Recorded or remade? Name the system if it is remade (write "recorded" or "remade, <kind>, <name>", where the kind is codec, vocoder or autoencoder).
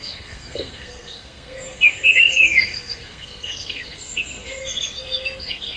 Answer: remade, codec, SNAC